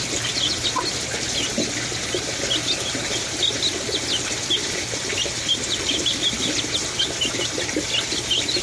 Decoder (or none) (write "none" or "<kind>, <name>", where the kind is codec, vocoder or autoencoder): none